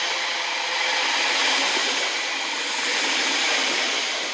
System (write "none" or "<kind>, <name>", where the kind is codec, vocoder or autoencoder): none